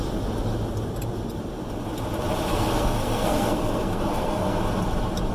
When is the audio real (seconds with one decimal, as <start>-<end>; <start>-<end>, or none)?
0.0-2.5; 4.6-5.3